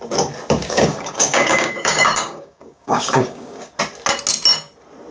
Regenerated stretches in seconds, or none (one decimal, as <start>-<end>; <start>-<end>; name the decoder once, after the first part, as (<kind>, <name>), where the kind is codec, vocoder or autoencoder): 0.6-3.7 (codec, DAC)